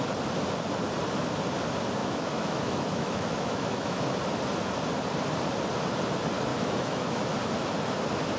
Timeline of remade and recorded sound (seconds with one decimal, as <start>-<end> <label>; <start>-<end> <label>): 0.0-2.0 recorded; 2.0-4.1 remade; 4.1-6.5 recorded; 6.5-7.2 remade; 7.2-8.4 recorded